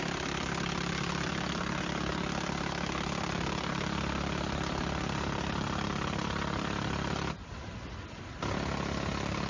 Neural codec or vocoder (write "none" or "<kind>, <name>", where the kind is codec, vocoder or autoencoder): none